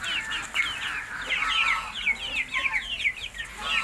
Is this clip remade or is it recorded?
recorded